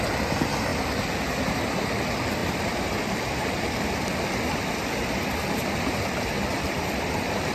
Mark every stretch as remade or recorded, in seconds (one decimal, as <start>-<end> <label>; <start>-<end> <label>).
0.0-7.5 recorded